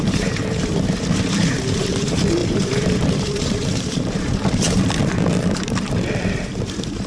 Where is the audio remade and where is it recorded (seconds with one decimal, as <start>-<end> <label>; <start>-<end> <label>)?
0.0-7.1 remade